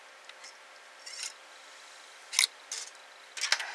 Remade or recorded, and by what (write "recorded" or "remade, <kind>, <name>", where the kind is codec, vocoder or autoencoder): recorded